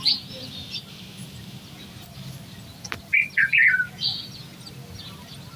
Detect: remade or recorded recorded